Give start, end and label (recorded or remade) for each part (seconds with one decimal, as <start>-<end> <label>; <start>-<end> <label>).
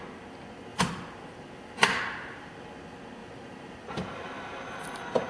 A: 0.0-0.7 recorded; 0.7-2.5 remade; 2.5-3.2 recorded; 3.2-4.6 remade; 4.6-5.3 recorded